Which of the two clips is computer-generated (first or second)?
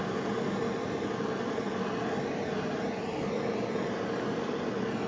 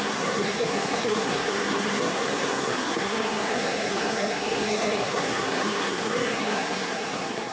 second